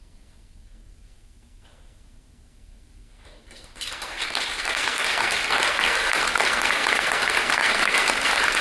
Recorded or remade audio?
remade